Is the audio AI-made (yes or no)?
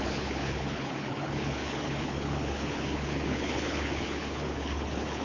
yes